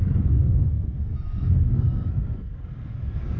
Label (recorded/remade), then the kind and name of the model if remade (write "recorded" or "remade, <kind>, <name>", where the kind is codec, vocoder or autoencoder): remade, codec, SNAC